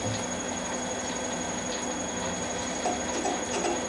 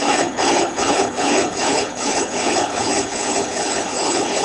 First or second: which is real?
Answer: first